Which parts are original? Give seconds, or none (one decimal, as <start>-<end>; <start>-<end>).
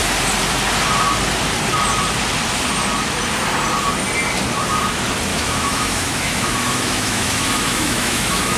0.0-5.3